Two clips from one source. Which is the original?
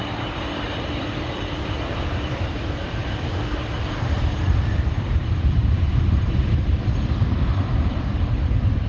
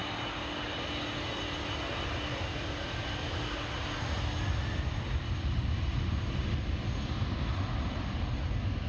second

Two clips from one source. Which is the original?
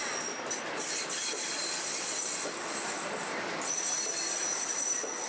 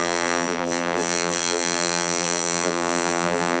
first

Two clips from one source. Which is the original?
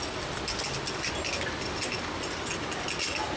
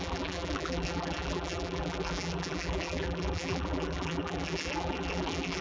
first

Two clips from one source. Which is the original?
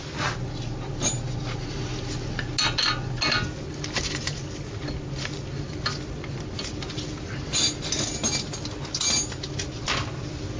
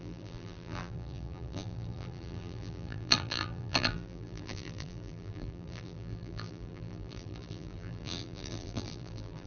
first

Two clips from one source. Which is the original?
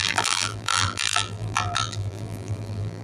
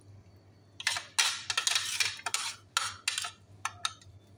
second